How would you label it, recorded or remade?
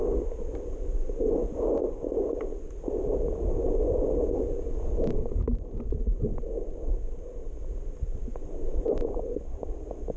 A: recorded